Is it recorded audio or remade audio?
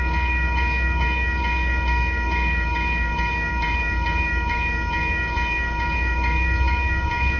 remade